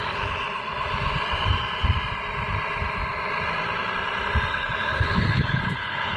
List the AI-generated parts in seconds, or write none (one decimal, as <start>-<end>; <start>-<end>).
4.5-6.2